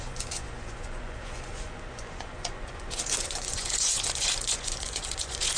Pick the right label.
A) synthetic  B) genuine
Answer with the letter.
A